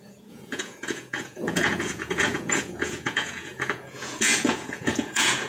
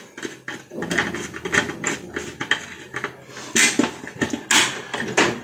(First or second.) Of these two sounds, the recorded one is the second